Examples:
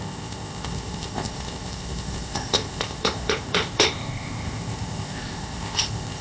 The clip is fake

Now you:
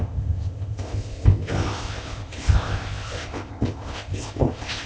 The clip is fake